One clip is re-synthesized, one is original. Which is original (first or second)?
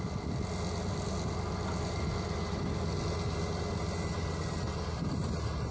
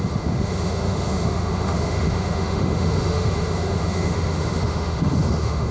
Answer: first